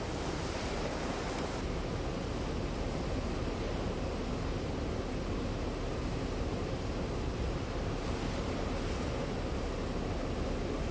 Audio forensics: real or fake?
real